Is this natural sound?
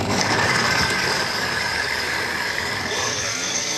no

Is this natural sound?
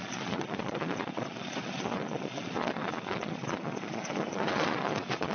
no